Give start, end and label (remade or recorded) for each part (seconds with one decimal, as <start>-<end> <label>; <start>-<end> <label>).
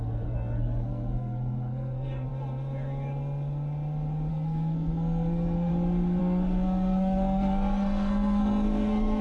0.0-2.3 remade; 2.3-4.3 recorded; 4.3-5.7 remade; 5.7-6.2 recorded; 6.2-9.2 remade